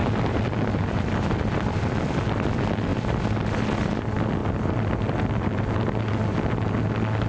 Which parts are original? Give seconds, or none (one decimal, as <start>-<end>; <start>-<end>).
2.2-7.3